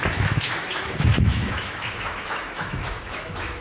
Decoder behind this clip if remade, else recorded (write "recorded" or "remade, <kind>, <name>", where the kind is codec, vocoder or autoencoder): remade, autoencoder, DAC-VAE